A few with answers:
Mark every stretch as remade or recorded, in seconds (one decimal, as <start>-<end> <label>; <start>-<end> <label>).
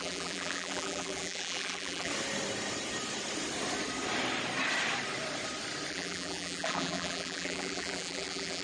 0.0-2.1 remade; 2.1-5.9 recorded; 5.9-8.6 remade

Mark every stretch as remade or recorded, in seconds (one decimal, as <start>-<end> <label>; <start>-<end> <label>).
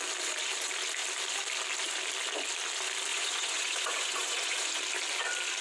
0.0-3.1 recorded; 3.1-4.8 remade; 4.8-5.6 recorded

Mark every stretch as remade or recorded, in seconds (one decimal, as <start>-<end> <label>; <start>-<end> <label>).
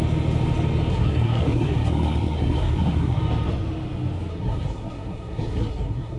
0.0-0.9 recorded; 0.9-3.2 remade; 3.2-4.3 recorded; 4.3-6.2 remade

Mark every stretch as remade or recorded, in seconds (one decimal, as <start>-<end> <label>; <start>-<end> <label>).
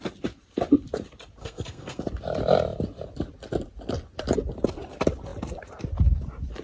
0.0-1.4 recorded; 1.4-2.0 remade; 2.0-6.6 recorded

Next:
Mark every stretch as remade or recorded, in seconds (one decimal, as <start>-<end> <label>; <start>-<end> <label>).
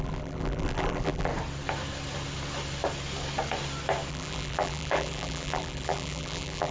0.0-1.3 remade; 1.3-4.1 recorded; 4.1-6.7 remade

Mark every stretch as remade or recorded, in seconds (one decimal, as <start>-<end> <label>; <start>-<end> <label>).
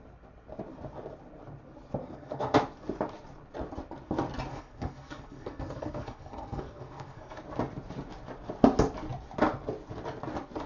0.0-2.0 recorded; 2.0-2.6 remade; 2.6-4.5 recorded; 4.5-7.4 remade; 7.4-10.7 recorded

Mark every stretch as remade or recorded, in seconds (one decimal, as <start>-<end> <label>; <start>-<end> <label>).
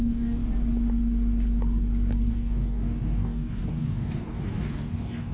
0.0-0.4 remade; 0.4-2.3 recorded; 2.3-5.3 remade